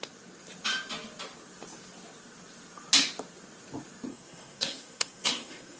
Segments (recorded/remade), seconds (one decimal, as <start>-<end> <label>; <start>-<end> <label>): 0.0-4.1 recorded; 4.1-5.8 remade